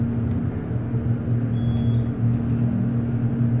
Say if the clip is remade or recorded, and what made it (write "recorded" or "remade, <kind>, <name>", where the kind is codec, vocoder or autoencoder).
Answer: recorded